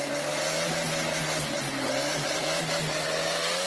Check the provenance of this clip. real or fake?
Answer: real